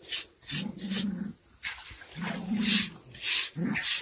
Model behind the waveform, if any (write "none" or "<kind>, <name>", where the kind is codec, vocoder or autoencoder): none